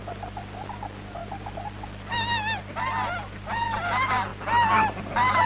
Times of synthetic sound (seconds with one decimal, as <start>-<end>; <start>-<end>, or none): none